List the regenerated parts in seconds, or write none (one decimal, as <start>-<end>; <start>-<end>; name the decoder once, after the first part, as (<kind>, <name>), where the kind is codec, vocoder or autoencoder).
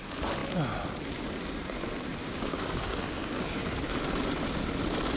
2.2-3.7 (codec, DAC)